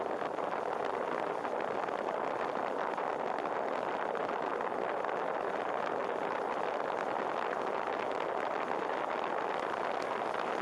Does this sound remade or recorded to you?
recorded